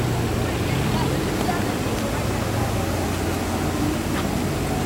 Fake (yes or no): no